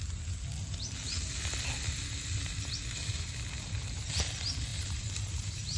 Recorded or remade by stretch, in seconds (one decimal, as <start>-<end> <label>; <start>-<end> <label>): 0.0-4.7 recorded; 4.7-5.8 remade